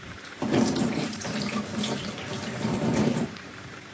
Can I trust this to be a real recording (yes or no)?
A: no